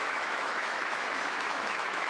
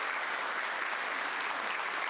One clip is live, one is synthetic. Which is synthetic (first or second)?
first